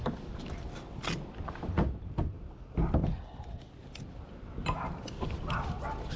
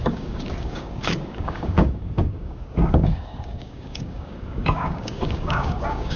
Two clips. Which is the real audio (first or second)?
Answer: first